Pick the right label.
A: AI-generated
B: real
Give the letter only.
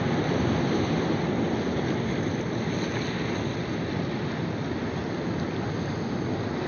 B